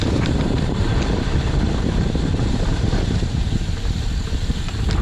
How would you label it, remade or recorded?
remade